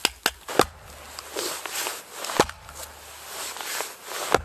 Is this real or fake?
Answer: real